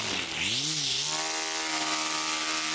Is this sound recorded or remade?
recorded